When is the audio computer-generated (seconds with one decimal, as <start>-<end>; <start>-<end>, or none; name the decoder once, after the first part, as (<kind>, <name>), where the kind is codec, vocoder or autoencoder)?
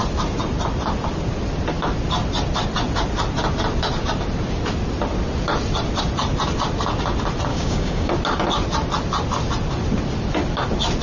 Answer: 7.5-8.1 (codec, DAC)